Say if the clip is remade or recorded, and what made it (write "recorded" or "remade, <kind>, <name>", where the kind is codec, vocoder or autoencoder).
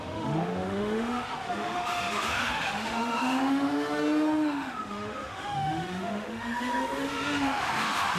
remade, autoencoder, DAC-VAE